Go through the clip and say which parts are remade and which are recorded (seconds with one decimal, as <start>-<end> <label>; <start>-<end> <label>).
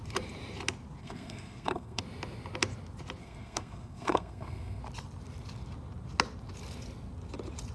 0.0-1.0 recorded; 1.0-2.0 remade; 2.0-3.2 recorded; 3.2-4.8 remade; 4.8-7.7 recorded